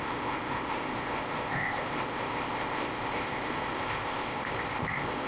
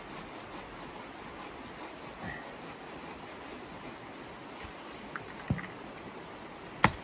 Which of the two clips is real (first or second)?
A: second